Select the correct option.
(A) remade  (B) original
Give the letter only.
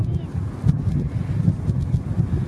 B